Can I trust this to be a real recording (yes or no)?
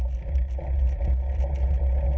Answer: yes